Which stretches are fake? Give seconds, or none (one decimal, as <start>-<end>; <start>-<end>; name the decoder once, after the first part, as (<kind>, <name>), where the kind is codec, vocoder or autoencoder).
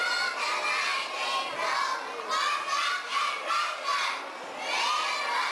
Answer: none